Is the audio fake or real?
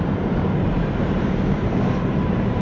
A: fake